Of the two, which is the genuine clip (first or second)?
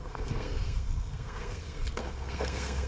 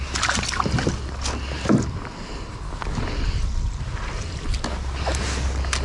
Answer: second